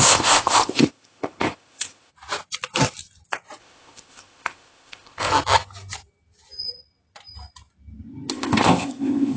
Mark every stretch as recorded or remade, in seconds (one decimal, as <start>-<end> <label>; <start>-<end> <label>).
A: 0.0-2.1 remade; 2.1-3.6 recorded; 3.6-5.3 remade; 5.3-8.3 recorded; 8.3-9.4 remade